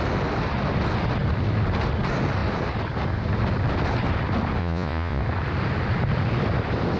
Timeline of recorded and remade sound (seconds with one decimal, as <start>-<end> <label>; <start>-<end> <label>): 0.0-4.6 recorded; 4.6-5.2 remade; 5.2-7.0 recorded